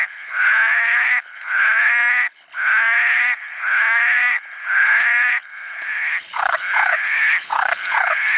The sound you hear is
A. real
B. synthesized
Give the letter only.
B